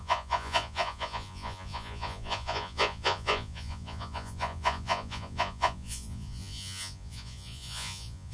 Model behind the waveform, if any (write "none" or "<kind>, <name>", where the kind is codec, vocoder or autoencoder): vocoder, Vocos